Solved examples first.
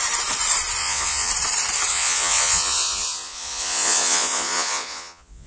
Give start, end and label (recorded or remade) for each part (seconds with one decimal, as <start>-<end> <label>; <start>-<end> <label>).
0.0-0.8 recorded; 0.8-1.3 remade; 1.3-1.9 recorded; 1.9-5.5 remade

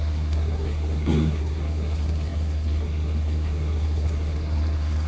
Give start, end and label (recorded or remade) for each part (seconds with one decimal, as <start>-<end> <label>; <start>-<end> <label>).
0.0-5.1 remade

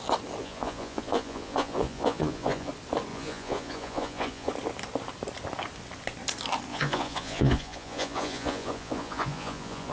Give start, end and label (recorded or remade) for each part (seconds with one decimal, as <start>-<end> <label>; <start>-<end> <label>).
0.0-0.4 recorded; 0.4-2.7 remade; 2.7-3.1 recorded; 3.1-4.5 remade; 4.5-6.7 recorded; 6.7-9.9 remade

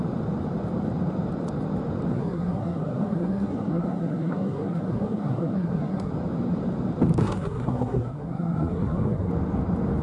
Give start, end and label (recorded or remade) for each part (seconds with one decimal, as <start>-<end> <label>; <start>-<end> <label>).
0.0-2.1 recorded; 2.1-6.1 remade; 6.1-7.2 recorded; 7.2-9.3 remade; 9.3-10.0 recorded

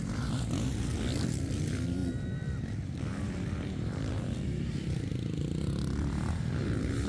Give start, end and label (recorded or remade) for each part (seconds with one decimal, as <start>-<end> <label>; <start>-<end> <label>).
0.0-2.0 recorded; 2.0-6.3 remade; 6.3-7.1 recorded

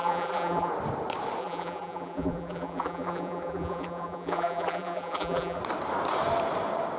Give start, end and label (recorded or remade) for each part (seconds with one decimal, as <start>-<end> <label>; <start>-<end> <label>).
0.0-0.7 remade; 0.7-1.4 recorded; 1.4-5.6 remade; 5.6-7.0 recorded